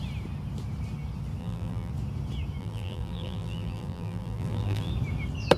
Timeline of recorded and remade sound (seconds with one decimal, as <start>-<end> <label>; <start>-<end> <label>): 0.0-1.4 recorded; 1.4-1.9 remade; 1.9-2.6 recorded; 2.6-4.9 remade; 4.9-5.6 recorded